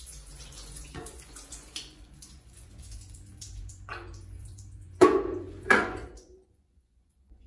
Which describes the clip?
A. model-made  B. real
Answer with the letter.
A